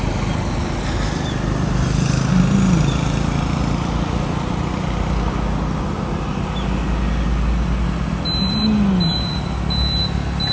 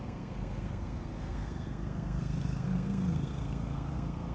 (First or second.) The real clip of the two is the first